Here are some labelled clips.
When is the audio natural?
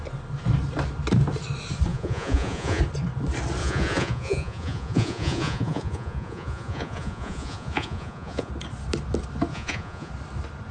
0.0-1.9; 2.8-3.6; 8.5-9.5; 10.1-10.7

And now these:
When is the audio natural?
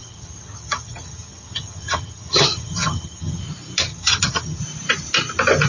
3.4-3.9; 4.6-5.7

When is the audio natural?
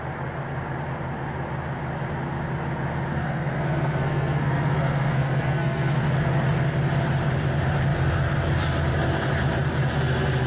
0.0-3.1; 6.0-10.5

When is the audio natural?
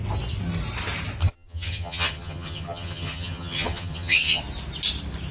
0.0-1.2; 4.4-5.3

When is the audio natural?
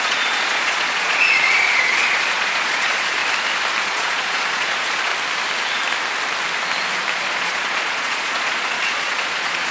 3.2-3.8; 5.1-7.1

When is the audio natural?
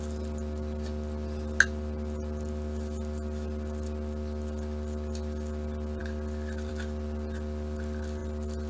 0.0-8.7